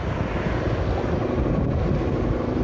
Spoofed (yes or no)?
no